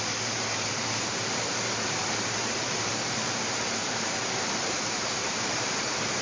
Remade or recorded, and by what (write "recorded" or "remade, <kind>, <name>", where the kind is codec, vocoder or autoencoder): remade, vocoder, BigVGAN v2